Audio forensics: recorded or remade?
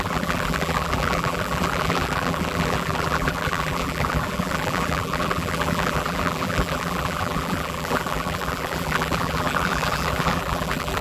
remade